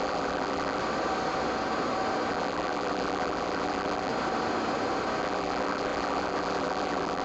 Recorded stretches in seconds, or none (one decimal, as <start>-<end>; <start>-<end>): 0.8-2.3; 4.1-5.2